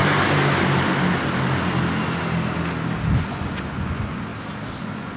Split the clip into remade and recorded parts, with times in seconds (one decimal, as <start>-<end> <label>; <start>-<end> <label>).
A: 0.0-3.1 recorded; 3.1-4.3 remade; 4.3-4.8 recorded; 4.8-5.2 remade